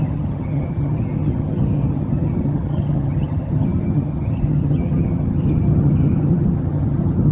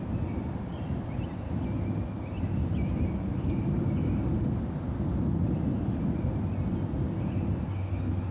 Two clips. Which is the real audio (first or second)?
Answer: second